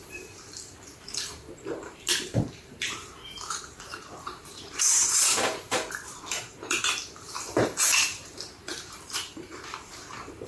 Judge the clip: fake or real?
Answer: fake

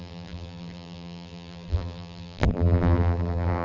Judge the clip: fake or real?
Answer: fake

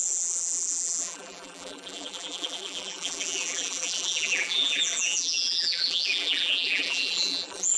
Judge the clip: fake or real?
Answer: fake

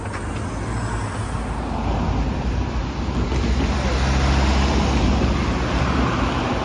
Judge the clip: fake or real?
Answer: real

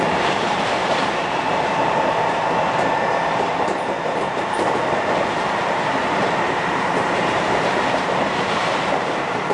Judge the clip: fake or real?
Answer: fake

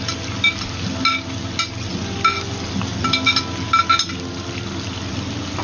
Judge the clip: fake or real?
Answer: real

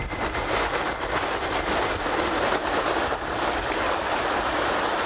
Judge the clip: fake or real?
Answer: real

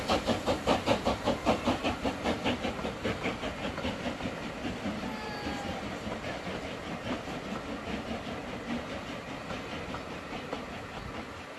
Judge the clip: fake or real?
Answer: real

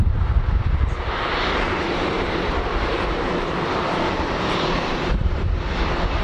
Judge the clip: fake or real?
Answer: fake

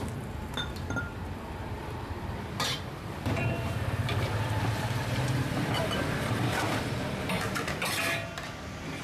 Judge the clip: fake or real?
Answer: fake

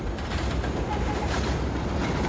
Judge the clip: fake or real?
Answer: fake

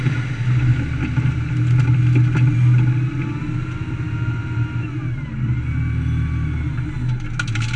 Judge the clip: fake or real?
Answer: real